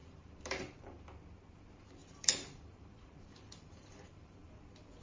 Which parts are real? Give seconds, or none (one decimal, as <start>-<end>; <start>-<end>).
1.0-2.0; 4.6-5.0